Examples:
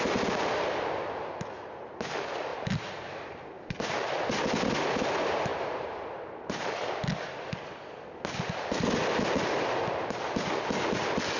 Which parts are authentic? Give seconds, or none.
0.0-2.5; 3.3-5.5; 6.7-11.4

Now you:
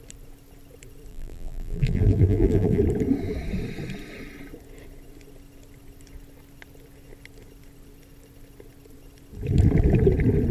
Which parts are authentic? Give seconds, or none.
0.0-1.1; 2.8-10.5

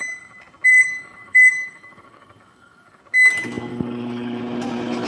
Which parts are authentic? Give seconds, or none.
0.0-0.7; 3.0-3.7; 4.4-5.1

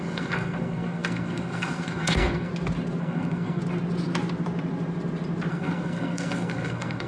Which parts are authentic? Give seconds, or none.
2.5-3.0; 3.6-5.5

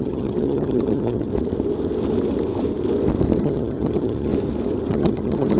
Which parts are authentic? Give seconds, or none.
1.3-3.4; 4.3-4.9